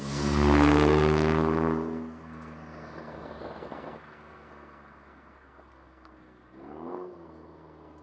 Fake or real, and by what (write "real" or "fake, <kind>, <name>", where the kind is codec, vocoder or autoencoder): fake, codec, SNAC